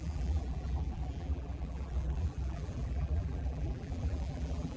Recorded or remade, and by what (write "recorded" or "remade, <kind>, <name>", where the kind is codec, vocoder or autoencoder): remade, vocoder, BigVGAN v2